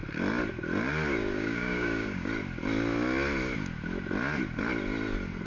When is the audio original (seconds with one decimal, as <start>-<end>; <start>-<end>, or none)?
0.0-1.2; 2.3-5.5